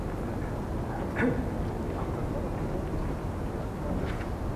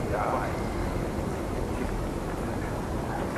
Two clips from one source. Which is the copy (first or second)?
second